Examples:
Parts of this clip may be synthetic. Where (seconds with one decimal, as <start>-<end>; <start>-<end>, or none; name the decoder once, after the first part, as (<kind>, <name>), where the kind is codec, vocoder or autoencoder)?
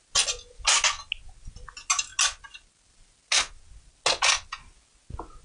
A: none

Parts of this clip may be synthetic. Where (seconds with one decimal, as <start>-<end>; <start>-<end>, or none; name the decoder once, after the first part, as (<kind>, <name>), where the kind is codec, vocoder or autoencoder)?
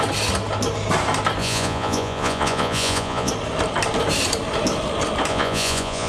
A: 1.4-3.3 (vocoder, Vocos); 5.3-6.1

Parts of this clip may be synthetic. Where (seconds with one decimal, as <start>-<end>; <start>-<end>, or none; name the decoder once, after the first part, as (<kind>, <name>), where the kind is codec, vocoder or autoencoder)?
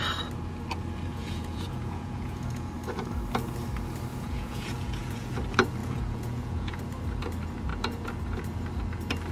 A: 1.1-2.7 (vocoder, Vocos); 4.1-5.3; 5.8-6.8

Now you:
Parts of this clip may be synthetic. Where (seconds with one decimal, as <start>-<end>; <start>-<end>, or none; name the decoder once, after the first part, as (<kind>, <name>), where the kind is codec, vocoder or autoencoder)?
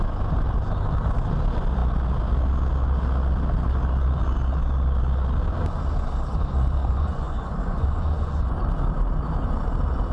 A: 6.8-8.6 (vocoder, Vocos)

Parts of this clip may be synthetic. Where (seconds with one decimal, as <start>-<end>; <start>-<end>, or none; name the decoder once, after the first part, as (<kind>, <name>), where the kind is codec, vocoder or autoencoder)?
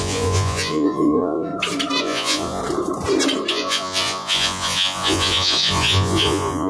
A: 0.0-1.5 (vocoder, Vocos); 2.0-2.6; 3.5-6.7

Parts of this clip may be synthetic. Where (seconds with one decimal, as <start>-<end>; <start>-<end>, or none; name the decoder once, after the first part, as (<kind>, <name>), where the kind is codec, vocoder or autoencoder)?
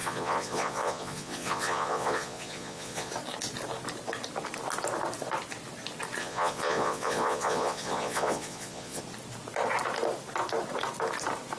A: 0.0-3.1 (vocoder, Vocos); 6.2-9.0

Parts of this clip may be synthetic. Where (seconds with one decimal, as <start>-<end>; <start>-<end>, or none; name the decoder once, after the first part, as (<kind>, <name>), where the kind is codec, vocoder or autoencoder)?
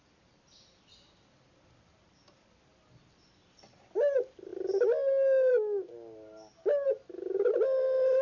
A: none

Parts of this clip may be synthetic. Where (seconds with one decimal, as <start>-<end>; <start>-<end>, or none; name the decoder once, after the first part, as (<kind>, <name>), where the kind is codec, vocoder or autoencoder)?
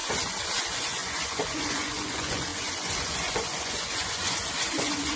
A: 0.6-5.2 (vocoder, Vocos)